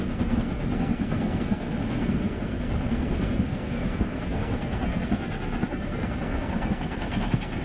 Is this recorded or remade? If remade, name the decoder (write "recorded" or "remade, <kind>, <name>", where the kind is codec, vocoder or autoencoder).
remade, codec, SNAC